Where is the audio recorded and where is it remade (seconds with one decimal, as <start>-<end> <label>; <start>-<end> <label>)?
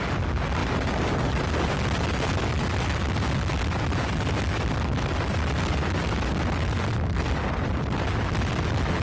0.0-9.0 recorded